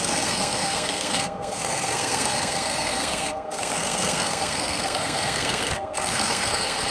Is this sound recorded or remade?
remade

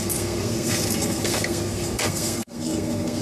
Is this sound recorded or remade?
remade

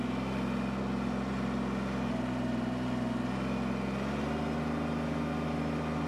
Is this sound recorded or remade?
recorded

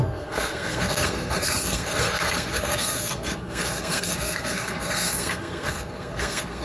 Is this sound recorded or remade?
remade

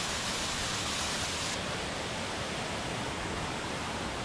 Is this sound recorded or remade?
recorded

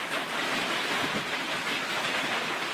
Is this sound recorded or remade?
recorded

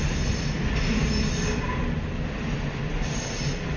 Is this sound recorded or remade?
recorded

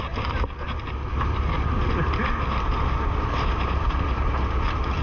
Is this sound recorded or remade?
recorded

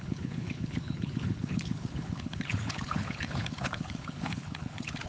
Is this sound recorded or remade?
remade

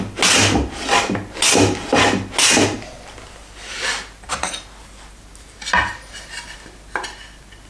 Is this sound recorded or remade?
recorded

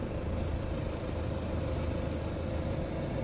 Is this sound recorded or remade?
recorded